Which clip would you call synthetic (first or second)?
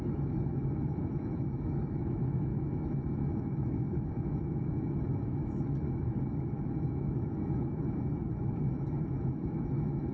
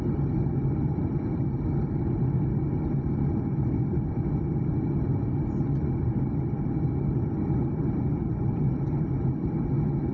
first